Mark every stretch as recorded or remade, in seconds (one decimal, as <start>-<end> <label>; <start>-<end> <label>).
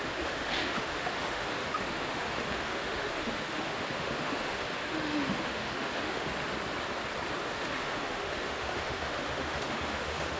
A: 0.0-6.3 remade; 6.3-7.4 recorded; 7.4-10.4 remade